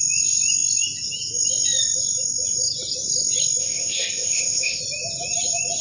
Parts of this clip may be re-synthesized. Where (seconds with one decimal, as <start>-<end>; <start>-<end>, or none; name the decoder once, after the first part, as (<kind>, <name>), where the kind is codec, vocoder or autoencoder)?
3.6-4.8 (codec, ZipCodec)